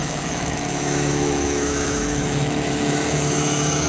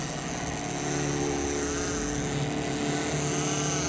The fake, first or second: first